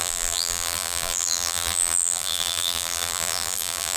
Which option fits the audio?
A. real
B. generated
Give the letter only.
B